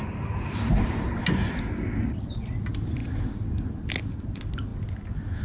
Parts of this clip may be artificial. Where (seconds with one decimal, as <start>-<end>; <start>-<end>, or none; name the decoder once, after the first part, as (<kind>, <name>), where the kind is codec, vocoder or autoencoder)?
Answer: none